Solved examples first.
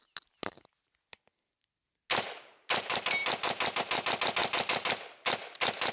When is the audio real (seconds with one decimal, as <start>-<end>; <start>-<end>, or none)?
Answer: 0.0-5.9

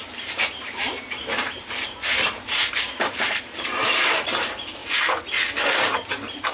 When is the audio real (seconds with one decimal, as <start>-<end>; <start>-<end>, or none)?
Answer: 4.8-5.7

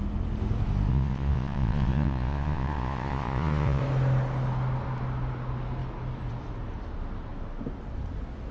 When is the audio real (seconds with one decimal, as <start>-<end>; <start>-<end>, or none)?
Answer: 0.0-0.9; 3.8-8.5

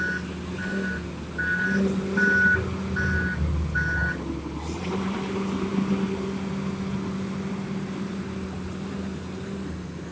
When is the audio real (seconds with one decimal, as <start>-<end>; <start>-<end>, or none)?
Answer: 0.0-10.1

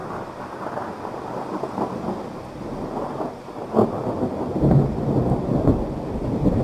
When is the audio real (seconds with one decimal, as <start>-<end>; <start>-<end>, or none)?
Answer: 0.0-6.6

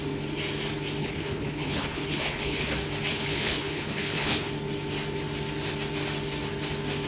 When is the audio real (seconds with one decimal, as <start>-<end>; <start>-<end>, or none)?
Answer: 0.0-1.0; 2.7-3.1; 4.5-7.1